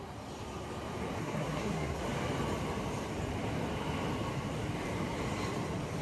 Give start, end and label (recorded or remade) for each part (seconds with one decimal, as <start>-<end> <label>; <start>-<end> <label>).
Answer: 0.0-1.2 recorded; 1.2-2.0 remade; 2.0-6.0 recorded